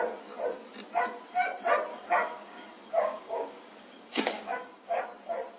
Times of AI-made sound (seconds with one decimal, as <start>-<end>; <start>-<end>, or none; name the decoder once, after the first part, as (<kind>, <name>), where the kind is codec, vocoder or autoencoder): 1.9-5.0 (codec, DAC)